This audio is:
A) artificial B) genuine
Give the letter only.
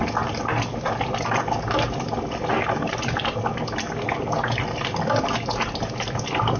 B